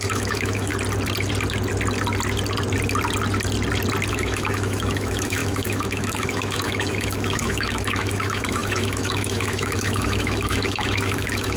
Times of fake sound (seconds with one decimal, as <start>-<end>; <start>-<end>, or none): 0.0-0.7; 4.1-11.6

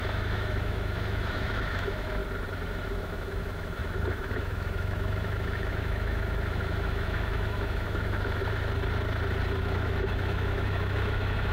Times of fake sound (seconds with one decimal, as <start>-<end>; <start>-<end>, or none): 0.0-2.2; 2.9-8.4; 9.6-11.5

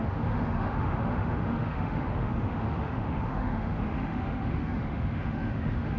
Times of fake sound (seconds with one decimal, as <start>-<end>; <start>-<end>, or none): 0.0-6.0

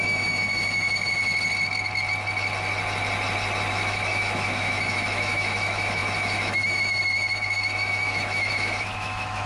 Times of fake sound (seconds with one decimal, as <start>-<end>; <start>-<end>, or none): 0.0-1.2; 3.7-9.5

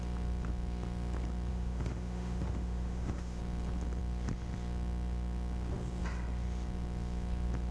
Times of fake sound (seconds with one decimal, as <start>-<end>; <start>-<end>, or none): 1.5-3.4

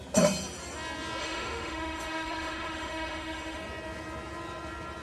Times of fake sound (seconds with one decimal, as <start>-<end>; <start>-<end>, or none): 1.2-3.6

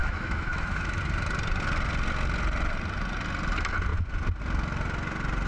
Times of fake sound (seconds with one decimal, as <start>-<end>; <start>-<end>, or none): 0.0-1.0

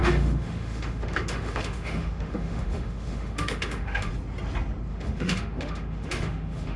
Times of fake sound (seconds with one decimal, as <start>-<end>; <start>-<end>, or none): 0.0-4.1; 4.9-6.8